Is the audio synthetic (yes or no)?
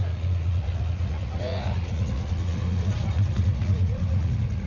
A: yes